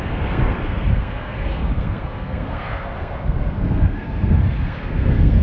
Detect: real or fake fake